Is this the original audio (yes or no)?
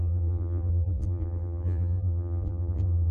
no